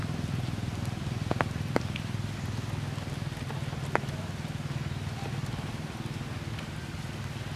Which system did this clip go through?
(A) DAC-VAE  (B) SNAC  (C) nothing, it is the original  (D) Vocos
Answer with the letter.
C